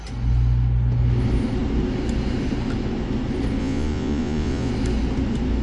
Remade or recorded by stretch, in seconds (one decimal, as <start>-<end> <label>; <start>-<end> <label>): 0.0-3.6 recorded; 3.6-4.7 remade; 4.7-5.6 recorded